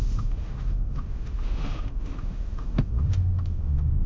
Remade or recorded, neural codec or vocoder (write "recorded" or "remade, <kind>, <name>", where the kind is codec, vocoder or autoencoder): remade, autoencoder, DAC-VAE